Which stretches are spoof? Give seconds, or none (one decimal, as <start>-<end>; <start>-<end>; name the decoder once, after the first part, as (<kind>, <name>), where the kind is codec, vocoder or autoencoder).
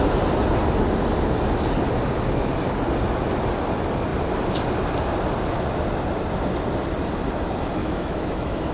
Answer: 7.8-8.7 (autoencoder, DAC-VAE)